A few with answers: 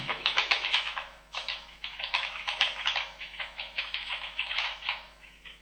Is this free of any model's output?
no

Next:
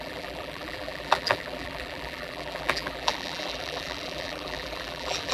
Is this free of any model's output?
no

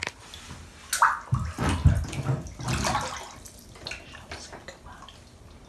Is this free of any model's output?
yes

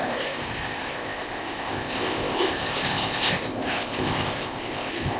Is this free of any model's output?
no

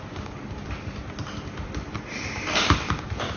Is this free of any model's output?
yes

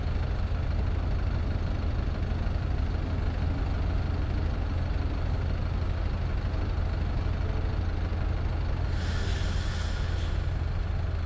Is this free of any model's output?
yes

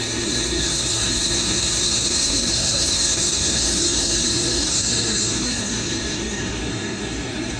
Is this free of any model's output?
no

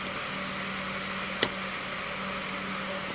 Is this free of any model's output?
yes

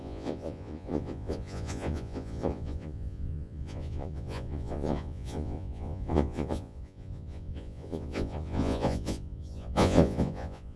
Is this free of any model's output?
no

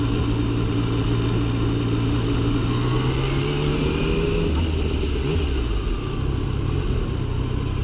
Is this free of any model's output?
yes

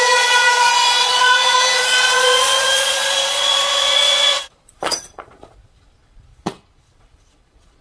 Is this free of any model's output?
no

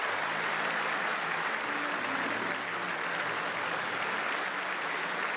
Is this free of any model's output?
yes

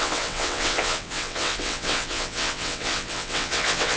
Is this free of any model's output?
no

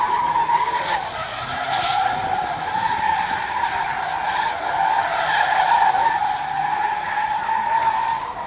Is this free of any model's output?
no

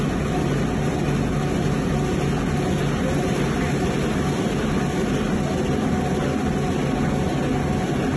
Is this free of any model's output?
yes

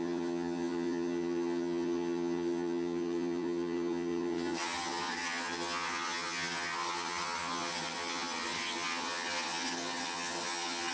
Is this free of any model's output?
no